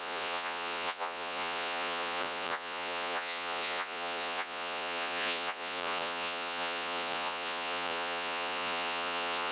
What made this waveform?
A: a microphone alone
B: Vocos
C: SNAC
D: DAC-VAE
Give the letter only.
B